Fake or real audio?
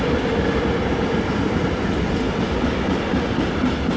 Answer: real